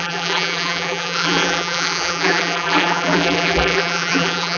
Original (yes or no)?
no